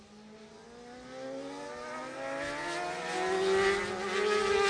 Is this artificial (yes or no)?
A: no